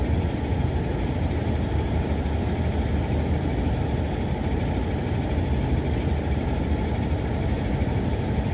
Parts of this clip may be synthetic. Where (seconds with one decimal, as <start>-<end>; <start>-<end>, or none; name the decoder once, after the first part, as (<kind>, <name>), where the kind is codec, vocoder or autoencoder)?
none